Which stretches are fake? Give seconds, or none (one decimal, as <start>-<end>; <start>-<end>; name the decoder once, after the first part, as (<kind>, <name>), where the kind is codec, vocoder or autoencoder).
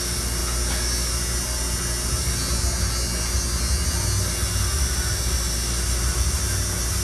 none